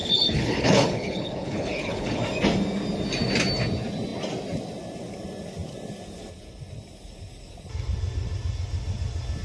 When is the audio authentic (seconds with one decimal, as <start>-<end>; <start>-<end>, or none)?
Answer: 2.2-9.4